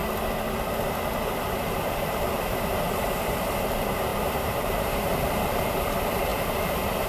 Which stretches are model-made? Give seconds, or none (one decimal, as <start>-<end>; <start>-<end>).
1.5-7.1